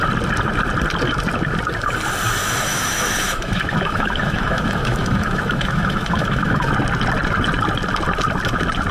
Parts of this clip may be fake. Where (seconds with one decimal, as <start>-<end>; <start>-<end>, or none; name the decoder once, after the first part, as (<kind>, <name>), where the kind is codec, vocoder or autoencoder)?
2.4-6.7 (autoencoder, DAC-VAE)